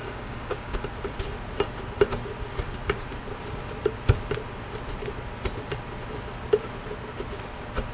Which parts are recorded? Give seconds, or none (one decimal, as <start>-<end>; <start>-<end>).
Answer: 0.8-7.9